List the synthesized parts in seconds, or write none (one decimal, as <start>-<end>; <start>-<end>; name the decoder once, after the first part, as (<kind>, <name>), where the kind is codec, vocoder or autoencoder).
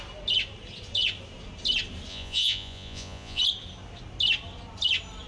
2.1-3.4 (vocoder, Vocos)